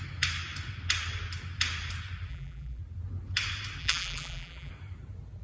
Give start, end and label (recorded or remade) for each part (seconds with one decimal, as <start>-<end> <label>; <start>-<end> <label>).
0.0-2.3 recorded; 2.3-2.8 remade; 2.8-3.8 recorded; 3.8-4.7 remade; 4.7-5.4 recorded